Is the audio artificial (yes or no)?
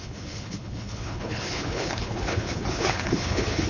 yes